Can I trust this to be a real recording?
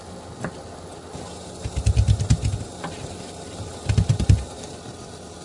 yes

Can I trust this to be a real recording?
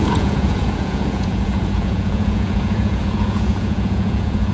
no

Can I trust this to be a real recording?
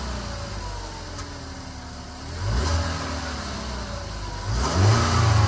yes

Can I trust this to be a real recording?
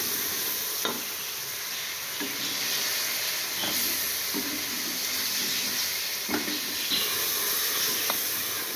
yes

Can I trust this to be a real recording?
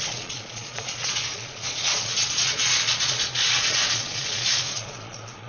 no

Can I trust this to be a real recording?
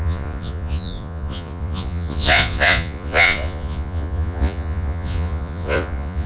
no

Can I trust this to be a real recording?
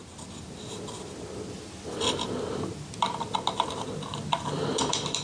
yes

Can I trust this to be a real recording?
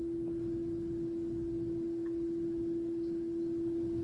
yes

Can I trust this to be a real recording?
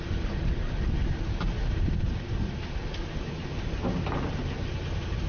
yes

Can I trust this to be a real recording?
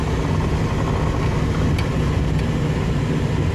yes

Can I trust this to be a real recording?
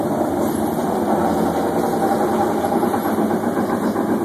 yes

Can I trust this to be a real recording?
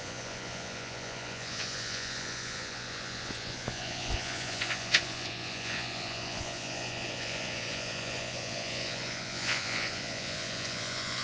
no